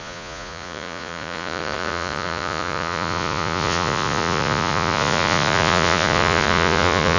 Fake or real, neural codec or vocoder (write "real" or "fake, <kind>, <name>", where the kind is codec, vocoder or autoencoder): fake, vocoder, Vocos